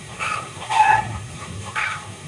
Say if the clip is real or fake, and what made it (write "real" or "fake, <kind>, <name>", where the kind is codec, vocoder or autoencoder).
fake, codec, SNAC